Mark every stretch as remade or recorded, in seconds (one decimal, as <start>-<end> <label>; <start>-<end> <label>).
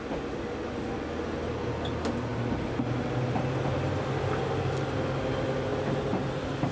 0.0-6.7 recorded